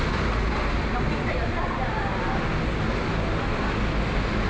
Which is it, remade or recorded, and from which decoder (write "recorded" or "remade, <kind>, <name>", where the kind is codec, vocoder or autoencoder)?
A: recorded